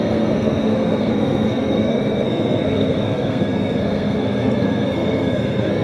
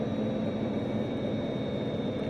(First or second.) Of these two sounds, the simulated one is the first